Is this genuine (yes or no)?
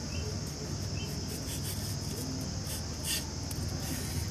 yes